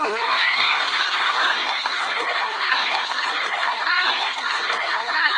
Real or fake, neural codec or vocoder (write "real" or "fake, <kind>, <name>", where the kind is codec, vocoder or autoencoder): fake, codec, SNAC